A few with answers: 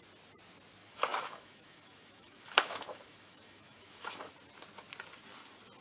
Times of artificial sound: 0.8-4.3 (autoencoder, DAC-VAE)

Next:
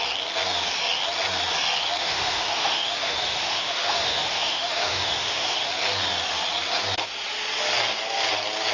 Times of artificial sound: 2.0-5.7 (autoencoder, DAC-VAE)

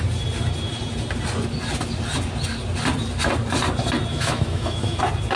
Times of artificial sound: 4.1-5.0 (autoencoder, DAC-VAE)

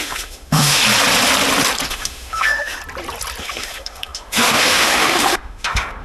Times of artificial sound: 0.0-0.8 (autoencoder, DAC-VAE); 1.9-2.8; 3.4-6.0

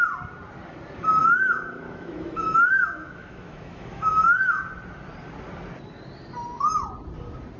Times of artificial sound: 1.2-4.6 (autoencoder, DAC-VAE)

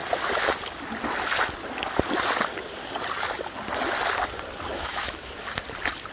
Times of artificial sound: 4.7-5.4 (autoencoder, DAC-VAE)